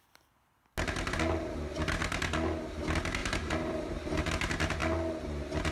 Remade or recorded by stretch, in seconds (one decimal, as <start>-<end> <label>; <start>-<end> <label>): 0.0-3.2 recorded; 3.2-4.3 remade; 4.3-5.7 recorded